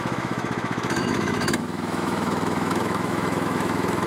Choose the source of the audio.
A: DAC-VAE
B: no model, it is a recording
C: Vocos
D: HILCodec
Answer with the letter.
A